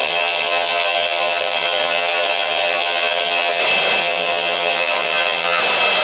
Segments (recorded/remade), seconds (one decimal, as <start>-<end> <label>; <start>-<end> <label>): 0.0-3.6 remade; 3.6-4.0 recorded; 4.0-5.6 remade; 5.6-6.0 recorded